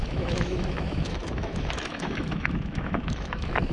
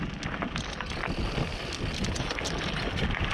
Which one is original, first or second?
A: second